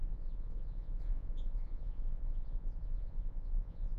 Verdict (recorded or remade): remade